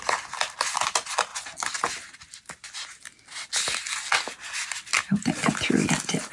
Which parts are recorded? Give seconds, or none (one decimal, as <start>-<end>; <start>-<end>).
0.0-6.3